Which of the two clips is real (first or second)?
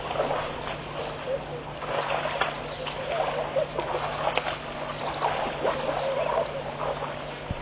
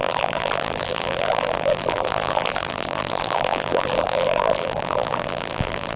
first